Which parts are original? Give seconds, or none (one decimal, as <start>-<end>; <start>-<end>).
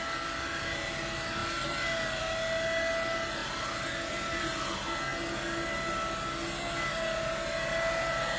0.0-8.4